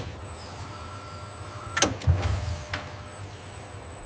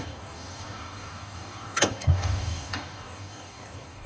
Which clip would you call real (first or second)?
first